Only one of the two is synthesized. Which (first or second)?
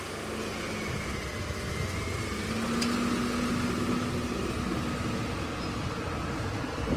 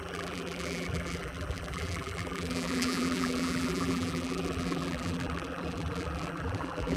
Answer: second